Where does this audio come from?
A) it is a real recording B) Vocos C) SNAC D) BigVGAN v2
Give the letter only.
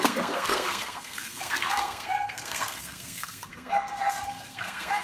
C